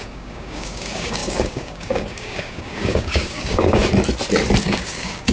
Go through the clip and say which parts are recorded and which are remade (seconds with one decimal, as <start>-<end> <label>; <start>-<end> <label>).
0.0-3.8 remade; 3.8-4.6 recorded; 4.6-5.3 remade